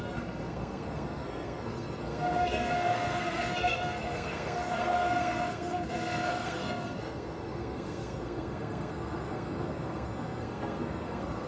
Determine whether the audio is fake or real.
fake